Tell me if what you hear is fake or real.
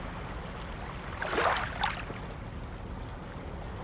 real